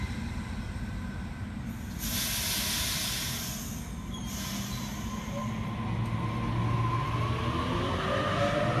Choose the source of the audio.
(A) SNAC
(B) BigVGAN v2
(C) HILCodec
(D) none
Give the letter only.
D